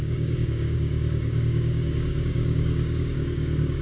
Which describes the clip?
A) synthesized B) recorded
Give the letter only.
A